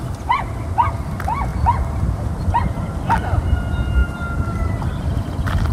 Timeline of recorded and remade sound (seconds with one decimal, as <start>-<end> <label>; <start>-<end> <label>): 0.0-1.5 recorded; 1.5-2.6 remade; 2.6-4.0 recorded; 4.0-5.0 remade; 5.0-5.7 recorded

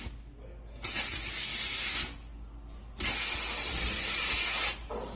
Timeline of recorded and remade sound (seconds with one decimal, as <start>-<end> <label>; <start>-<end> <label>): 0.0-5.2 recorded

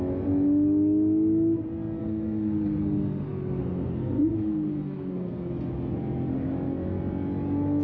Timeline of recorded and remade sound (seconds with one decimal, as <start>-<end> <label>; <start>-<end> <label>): 0.0-2.0 recorded; 2.0-5.7 remade; 5.7-7.8 recorded

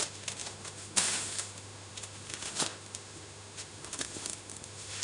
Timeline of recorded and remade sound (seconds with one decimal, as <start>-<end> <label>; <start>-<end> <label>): 0.0-5.0 remade

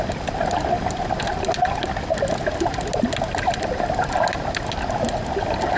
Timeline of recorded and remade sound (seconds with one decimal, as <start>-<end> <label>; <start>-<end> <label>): 0.0-5.8 recorded

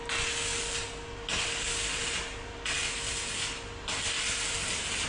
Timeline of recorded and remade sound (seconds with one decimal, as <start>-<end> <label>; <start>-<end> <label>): 0.0-5.1 recorded

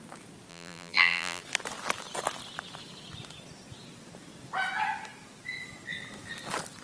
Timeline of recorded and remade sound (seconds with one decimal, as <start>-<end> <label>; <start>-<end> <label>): 0.0-0.5 recorded; 0.5-1.4 remade; 1.4-6.8 recorded

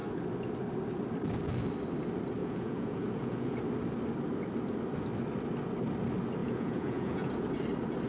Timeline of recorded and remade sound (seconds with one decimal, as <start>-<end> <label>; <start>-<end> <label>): 0.0-2.4 recorded; 2.4-3.6 remade; 3.6-6.4 recorded; 6.4-7.3 remade; 7.3-8.1 recorded